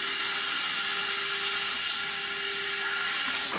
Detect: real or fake real